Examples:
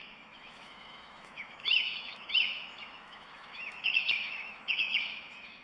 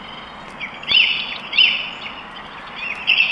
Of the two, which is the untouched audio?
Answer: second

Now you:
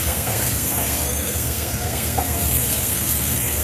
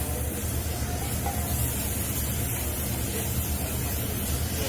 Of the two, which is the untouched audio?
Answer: second